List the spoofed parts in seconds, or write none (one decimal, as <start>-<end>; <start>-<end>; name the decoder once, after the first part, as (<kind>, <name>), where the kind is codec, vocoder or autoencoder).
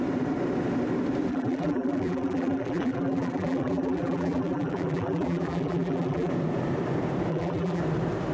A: 1.3-6.3 (vocoder, BigVGAN v2); 7.3-7.8